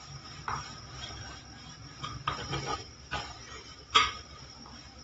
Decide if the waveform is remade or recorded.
recorded